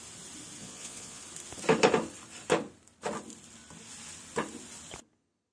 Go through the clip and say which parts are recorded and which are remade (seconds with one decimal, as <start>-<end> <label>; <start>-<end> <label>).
0.0-0.6 recorded; 0.6-1.2 remade; 1.2-5.5 recorded